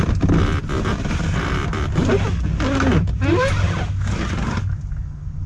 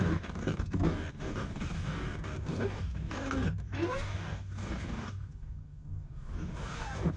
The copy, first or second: second